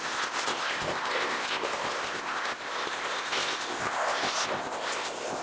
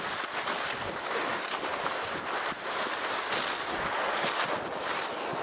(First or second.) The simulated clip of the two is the first